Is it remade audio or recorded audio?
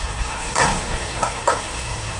remade